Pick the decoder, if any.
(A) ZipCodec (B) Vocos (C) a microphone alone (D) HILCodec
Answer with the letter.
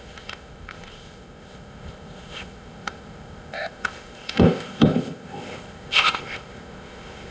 A